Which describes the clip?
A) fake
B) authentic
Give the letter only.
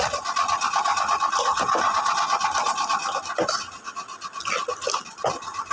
B